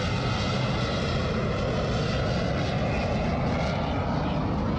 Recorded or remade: recorded